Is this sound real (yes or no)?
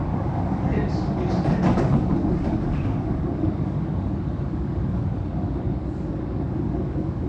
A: no